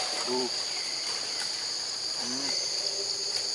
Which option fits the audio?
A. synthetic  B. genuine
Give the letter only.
B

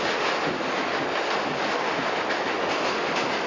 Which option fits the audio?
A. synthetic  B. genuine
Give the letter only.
B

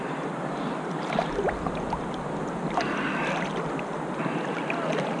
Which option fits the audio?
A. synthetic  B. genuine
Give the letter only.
B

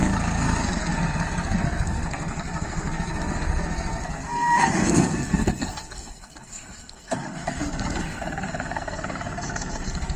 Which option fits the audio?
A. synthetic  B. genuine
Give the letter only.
A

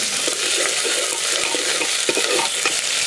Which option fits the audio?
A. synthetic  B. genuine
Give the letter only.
B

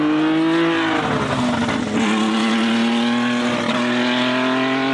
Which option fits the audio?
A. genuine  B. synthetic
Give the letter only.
A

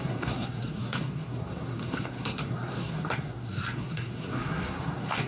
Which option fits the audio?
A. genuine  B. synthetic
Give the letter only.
B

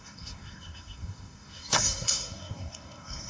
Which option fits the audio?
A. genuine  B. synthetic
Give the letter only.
B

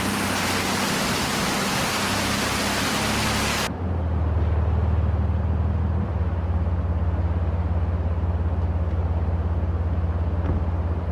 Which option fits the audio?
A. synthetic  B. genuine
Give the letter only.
B